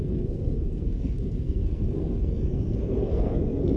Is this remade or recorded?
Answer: remade